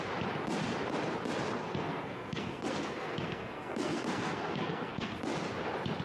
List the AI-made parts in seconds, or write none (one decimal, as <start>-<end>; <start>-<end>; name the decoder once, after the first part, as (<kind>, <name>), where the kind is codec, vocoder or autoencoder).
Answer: 1.6-5.2 (codec, SNAC)